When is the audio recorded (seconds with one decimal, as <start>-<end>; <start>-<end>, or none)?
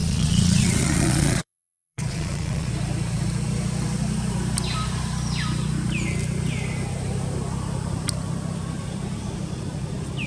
2.7-10.3